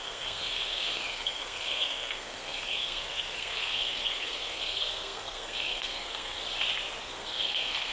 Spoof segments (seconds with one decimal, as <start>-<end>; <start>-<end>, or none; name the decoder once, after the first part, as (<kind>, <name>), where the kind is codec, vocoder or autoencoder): 0.0-6.4 (codec, SNAC); 7.0-7.9